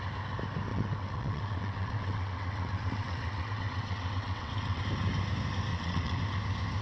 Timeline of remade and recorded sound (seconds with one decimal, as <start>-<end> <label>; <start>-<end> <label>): 0.0-0.7 recorded; 0.7-4.8 remade; 4.8-5.7 recorded; 5.7-6.2 remade; 6.2-6.8 recorded